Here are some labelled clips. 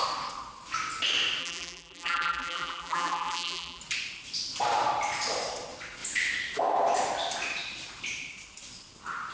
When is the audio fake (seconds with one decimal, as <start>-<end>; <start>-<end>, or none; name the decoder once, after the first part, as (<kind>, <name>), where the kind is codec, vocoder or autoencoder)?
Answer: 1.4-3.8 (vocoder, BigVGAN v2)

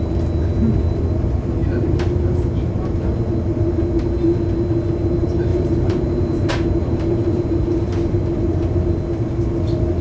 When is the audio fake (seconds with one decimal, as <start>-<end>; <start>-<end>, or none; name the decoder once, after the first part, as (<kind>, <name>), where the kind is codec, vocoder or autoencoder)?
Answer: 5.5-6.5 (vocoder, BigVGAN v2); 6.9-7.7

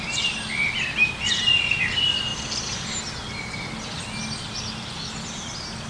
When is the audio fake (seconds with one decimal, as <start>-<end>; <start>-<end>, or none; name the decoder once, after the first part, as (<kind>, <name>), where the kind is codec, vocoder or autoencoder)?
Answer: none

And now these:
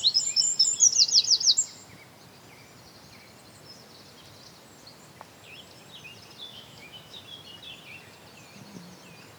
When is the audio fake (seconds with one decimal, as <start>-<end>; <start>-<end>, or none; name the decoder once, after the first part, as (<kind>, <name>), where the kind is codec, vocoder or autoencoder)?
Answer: 6.5-7.2 (autoencoder, DAC-VAE)

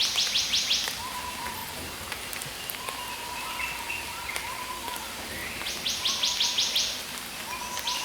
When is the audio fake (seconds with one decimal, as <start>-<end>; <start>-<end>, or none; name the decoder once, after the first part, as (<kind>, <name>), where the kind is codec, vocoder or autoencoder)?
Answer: none

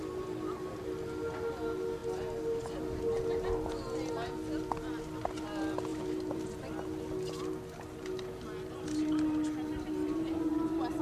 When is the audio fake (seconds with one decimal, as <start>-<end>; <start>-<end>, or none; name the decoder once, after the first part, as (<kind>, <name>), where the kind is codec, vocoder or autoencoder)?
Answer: 5.9-6.7 (vocoder, BigVGAN v2)

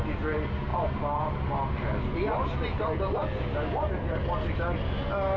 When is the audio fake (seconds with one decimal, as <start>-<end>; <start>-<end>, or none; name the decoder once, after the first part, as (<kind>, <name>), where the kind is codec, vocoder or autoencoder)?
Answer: none